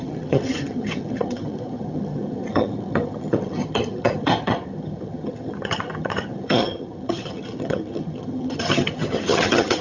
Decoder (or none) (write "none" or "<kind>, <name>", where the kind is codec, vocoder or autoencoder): vocoder, HiFi-GAN